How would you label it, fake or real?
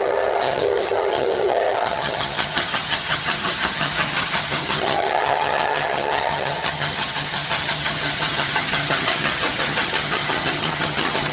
fake